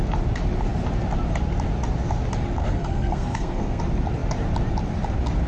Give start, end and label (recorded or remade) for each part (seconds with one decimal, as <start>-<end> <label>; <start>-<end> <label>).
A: 0.0-2.6 recorded; 2.6-3.8 remade; 3.8-5.5 recorded